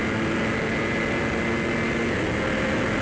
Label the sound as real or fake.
real